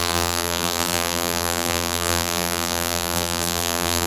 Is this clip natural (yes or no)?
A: no